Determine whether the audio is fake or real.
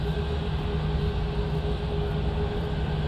real